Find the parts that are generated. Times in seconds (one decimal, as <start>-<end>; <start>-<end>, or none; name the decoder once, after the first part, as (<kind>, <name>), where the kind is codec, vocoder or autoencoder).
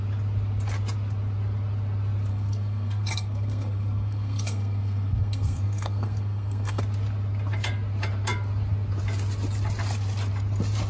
2.3-6.8 (codec, SNAC)